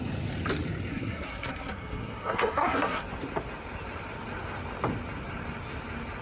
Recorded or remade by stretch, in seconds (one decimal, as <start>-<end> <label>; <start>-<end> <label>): 0.0-0.9 recorded; 0.9-3.0 remade; 3.0-6.2 recorded